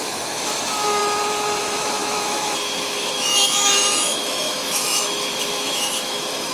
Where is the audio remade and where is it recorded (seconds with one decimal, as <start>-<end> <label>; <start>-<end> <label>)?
0.0-1.0 remade; 1.0-1.6 recorded; 1.6-6.5 remade